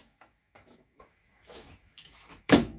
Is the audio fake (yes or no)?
yes